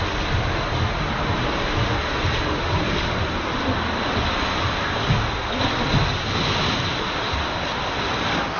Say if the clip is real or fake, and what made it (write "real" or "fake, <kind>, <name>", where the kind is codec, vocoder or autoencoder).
real